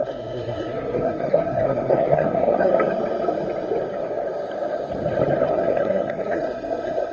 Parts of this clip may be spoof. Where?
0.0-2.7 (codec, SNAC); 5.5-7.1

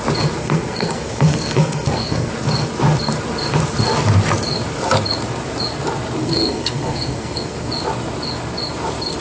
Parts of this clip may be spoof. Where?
0.4-2.3 (codec, SNAC); 6.2-7.7

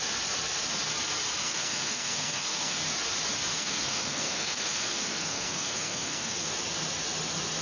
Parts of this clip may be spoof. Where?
1.4-2.8 (codec, SNAC); 3.5-6.5